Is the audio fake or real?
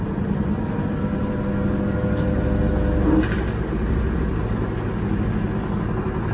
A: real